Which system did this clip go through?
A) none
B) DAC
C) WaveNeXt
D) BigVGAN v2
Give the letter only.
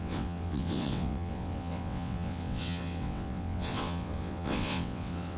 C